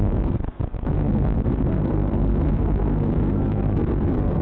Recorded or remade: remade